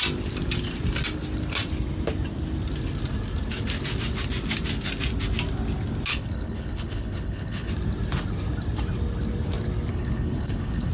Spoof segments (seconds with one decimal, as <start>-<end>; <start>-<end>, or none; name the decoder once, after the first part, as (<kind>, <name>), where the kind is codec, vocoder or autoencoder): 6.1-7.7 (codec, HILCodec); 9.9-10.9